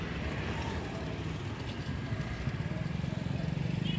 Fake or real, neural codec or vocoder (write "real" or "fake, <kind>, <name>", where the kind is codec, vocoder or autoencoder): real